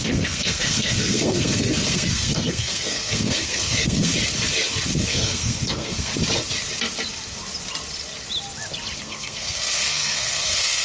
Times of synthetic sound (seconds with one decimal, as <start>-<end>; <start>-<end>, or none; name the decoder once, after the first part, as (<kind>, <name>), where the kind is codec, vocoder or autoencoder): 0.0-4.1 (codec, SNAC); 5.1-6.1; 9.0-10.8